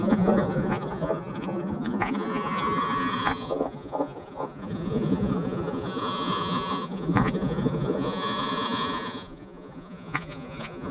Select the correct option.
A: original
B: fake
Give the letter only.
B